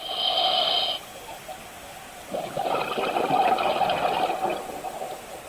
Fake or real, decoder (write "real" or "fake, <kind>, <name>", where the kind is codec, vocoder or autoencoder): real